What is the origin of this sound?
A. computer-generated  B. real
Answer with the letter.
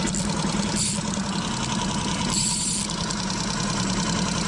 B